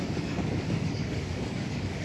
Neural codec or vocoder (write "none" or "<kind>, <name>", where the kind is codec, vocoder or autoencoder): codec, DAC